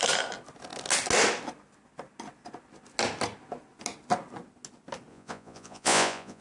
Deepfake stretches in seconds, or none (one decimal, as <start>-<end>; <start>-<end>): 5.1-6.4